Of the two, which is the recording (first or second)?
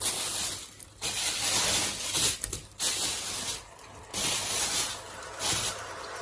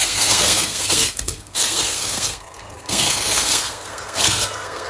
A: first